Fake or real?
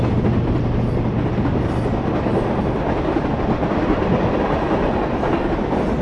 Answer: real